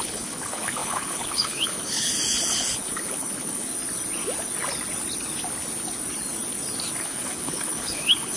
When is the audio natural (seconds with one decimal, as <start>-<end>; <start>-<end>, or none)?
3.7-7.0